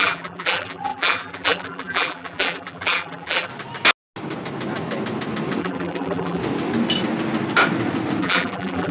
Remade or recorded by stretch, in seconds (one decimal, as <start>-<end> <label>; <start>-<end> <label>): 0.0-3.5 remade; 3.5-5.6 recorded; 5.6-6.4 remade; 6.4-8.2 recorded; 8.2-8.9 remade